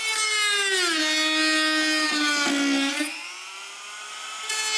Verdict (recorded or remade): recorded